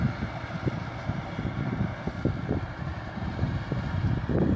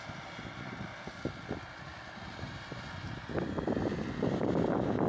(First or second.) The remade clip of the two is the first